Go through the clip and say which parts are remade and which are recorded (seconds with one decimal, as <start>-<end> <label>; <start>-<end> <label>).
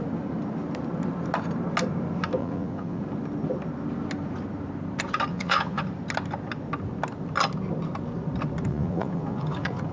0.0-2.4 recorded; 2.4-3.0 remade; 3.0-5.3 recorded; 5.3-5.8 remade; 5.8-8.7 recorded; 8.7-9.9 remade